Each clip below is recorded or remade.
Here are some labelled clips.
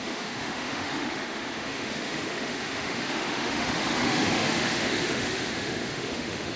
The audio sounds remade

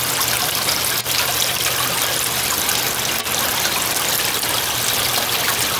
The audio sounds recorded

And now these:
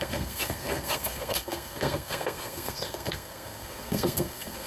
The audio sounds remade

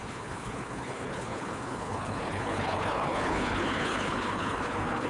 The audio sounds remade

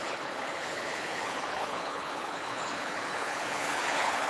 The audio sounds remade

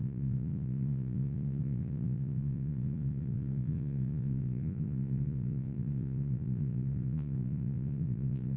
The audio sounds remade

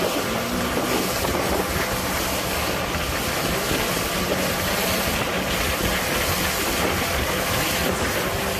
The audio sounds recorded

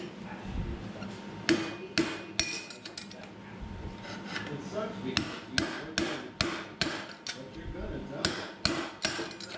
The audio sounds recorded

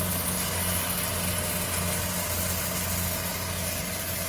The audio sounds recorded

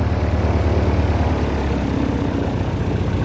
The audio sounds recorded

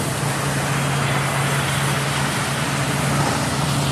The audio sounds recorded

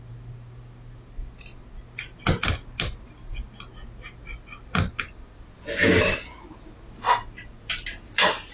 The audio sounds recorded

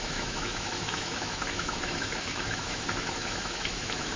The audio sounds remade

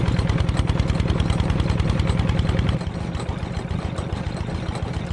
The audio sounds recorded